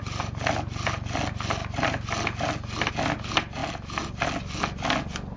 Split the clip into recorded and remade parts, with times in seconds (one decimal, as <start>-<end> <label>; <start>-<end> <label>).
0.0-5.4 recorded